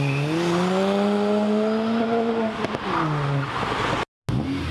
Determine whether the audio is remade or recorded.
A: recorded